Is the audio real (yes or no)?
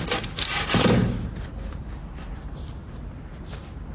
yes